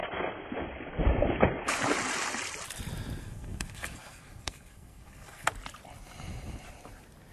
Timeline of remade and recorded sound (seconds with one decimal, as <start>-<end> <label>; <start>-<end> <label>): 0.0-3.2 recorded; 3.2-5.5 remade; 5.5-7.3 recorded